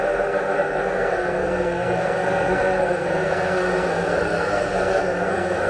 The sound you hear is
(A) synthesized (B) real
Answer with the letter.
A